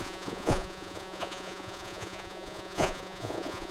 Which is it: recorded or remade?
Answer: remade